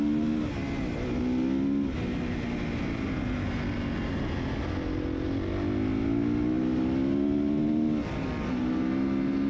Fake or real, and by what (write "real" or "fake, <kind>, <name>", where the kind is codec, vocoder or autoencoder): real